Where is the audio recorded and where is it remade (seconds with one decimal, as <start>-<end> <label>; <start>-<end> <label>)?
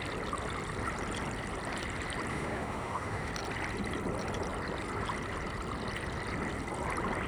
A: 0.0-2.3 recorded; 2.3-3.3 remade; 3.3-7.3 recorded